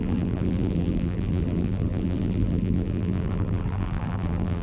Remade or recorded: remade